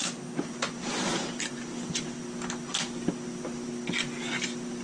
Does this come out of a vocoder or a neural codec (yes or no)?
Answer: no